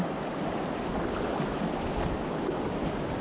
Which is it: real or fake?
real